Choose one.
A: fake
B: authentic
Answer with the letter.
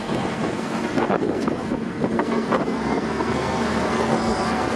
A